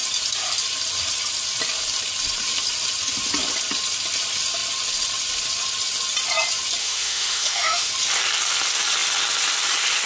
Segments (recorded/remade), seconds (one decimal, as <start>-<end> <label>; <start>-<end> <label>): 0.0-6.8 recorded; 6.8-7.9 remade; 7.9-10.1 recorded